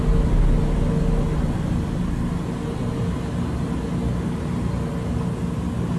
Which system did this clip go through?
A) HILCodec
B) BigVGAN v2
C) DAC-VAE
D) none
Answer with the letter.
D